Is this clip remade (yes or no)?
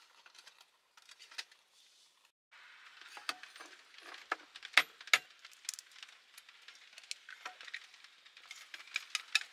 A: no